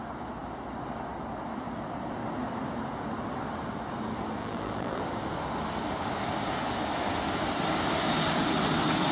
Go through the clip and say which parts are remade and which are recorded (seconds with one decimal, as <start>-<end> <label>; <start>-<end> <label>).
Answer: 0.0-4.4 recorded; 4.4-5.0 remade; 5.0-9.1 recorded